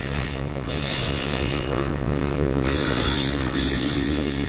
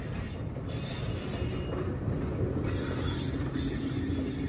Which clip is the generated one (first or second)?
first